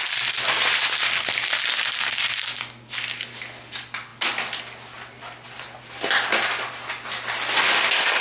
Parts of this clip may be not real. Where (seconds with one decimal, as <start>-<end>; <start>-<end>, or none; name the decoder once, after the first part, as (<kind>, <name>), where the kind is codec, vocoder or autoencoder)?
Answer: none